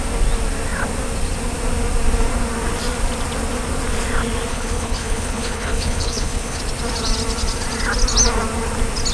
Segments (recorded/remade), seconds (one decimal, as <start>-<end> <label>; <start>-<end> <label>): 0.0-4.5 recorded; 4.5-6.6 remade; 6.6-9.1 recorded